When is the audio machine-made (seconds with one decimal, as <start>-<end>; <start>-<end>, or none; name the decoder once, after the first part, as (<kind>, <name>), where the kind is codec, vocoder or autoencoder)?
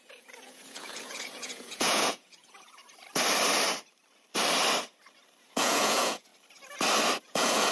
0.0-2.8 (vocoder, Vocos); 5.4-6.3; 7.2-7.7